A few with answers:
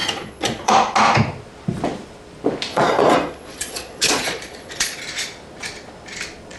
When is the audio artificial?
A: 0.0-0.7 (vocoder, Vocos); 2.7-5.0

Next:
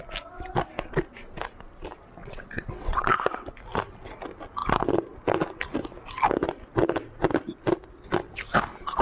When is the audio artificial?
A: 2.2-3.5 (vocoder, WaveNeXt)

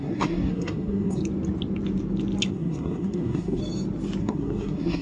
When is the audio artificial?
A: 0.0-1.2 (codec, SNAC); 2.5-3.6; 4.2-5.0

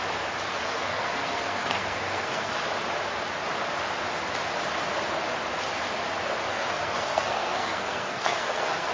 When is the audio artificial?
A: 0.5-2.5 (codec, SNAC); 6.5-8.9

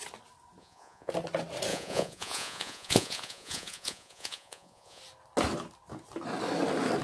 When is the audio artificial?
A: 0.6-1.1 (vocoder, Vocos); 1.7-5.0

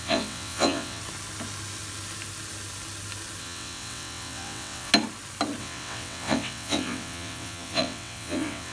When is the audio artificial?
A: 0.0-1.0 (vocoder, WaveNeXt); 3.4-4.9; 5.6-8.7